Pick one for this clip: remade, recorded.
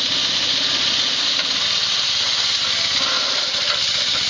recorded